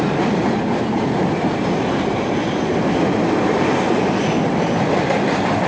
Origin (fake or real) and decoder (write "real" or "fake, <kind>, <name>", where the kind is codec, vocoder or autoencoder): real